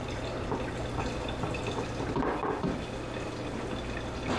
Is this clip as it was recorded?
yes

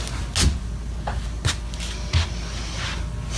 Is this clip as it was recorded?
yes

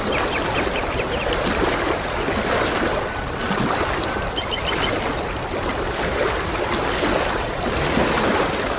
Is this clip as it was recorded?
yes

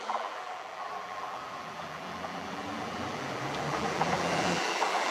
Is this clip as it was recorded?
no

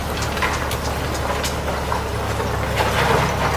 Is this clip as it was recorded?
yes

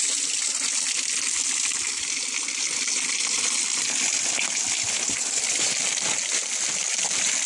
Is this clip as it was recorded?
yes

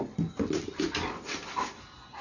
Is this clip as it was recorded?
yes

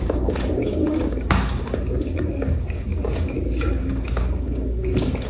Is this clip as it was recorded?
no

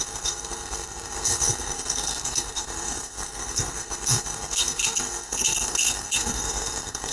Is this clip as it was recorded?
no